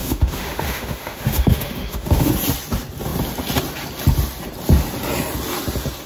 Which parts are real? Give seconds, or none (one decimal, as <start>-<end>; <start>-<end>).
2.3-6.1